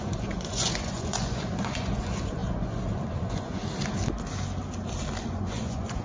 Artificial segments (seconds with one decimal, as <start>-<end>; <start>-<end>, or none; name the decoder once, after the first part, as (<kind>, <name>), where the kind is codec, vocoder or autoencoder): 0.0-3.6 (vocoder, Vocos); 5.2-6.0